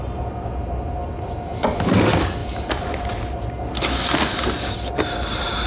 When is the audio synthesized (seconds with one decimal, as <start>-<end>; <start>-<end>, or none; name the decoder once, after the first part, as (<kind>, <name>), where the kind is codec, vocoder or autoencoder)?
none